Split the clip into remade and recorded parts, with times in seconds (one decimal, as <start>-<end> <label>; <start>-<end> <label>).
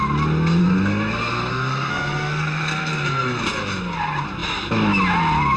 0.0-0.6 recorded; 0.6-3.4 remade; 3.4-5.6 recorded